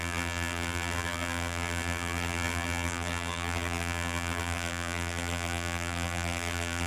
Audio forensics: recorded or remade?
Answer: remade